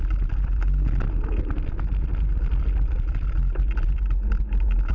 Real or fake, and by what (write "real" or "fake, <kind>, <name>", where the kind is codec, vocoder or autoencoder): real